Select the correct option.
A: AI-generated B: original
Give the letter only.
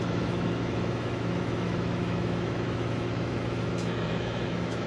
A